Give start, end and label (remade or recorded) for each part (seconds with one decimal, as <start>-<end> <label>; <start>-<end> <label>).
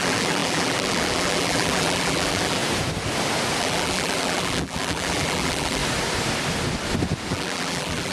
0.0-2.6 remade; 2.6-3.6 recorded; 3.6-5.8 remade; 5.8-7.3 recorded; 7.3-8.1 remade